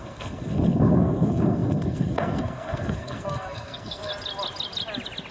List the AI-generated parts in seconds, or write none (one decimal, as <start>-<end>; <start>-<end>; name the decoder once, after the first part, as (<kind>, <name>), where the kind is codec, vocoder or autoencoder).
0.0-4.1 (codec, SNAC)